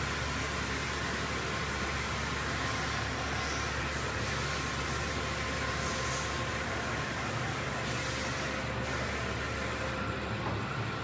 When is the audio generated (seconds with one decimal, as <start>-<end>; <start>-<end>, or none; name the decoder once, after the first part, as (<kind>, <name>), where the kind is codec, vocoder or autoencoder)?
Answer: 6.5-7.5 (vocoder, BigVGAN v2)